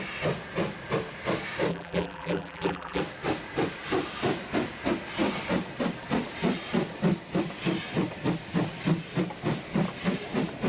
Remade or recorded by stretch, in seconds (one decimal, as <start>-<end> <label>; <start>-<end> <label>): 0.0-1.7 recorded; 1.7-3.0 remade; 3.0-10.7 recorded